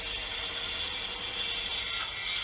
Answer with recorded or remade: recorded